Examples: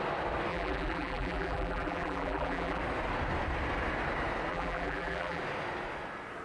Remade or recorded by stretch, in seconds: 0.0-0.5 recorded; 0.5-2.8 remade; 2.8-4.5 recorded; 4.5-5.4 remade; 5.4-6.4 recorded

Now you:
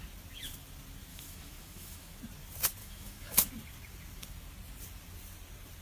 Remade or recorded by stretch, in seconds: 0.0-1.1 recorded; 1.1-2.2 remade; 2.2-2.8 recorded; 2.8-3.5 remade; 3.5-5.8 recorded

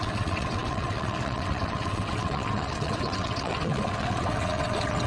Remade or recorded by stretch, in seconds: 0.0-5.1 remade

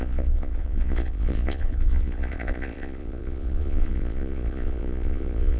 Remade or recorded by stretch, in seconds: 0.0-5.6 remade

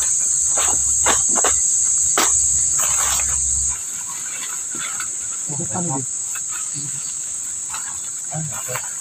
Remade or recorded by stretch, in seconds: 0.0-6.6 recorded; 6.6-7.4 remade; 7.4-9.0 recorded

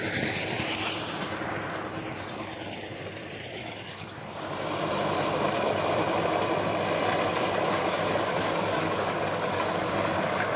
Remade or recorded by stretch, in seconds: 0.0-3.6 recorded; 3.6-4.3 remade; 4.3-7.3 recorded; 7.3-10.6 remade

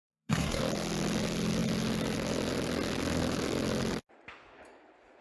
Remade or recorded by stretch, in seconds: 0.0-0.6 remade; 0.6-5.2 recorded

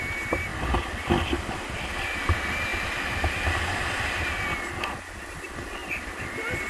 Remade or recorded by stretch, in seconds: 0.0-6.7 recorded